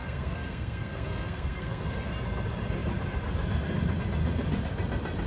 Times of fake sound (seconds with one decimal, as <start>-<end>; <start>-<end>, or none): 0.0-2.1